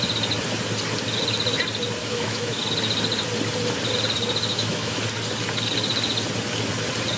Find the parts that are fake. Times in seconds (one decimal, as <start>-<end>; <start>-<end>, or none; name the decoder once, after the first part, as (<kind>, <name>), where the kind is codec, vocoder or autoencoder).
2.0-2.6 (autoencoder, DAC-VAE); 4.5-5.0